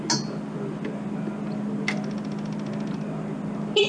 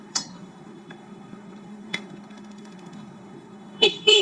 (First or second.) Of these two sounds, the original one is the first